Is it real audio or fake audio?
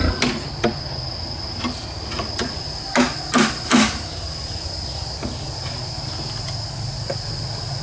real